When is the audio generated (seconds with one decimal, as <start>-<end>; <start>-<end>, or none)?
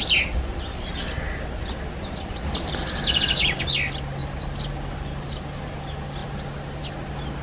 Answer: 4.2-5.3